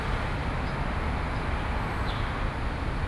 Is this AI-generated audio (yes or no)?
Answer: no